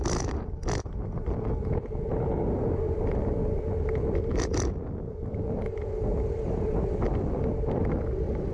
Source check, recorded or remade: recorded